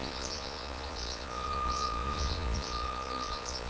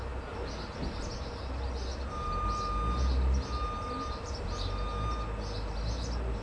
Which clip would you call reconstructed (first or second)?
first